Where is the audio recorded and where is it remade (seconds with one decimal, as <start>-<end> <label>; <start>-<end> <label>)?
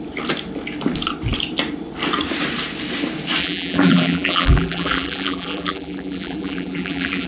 0.0-3.4 recorded; 3.4-7.3 remade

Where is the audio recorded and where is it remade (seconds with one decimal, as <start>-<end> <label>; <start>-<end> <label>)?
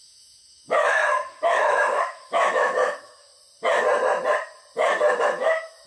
0.0-3.3 remade; 3.3-5.2 recorded; 5.2-5.9 remade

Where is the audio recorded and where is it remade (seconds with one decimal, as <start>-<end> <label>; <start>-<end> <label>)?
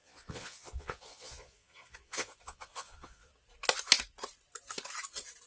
0.0-3.3 remade; 3.3-5.5 recorded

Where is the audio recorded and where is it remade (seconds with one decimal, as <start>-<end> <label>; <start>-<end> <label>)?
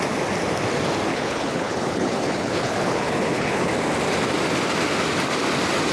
0.0-1.1 recorded; 1.1-3.7 remade; 3.7-5.9 recorded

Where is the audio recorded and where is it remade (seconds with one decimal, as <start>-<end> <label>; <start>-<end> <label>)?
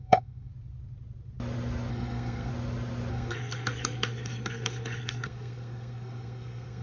0.0-0.5 remade; 0.5-1.9 recorded; 1.9-2.5 remade; 2.5-3.1 recorded; 3.1-6.8 remade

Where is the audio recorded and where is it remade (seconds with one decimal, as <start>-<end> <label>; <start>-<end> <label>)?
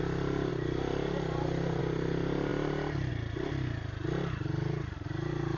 0.0-5.6 recorded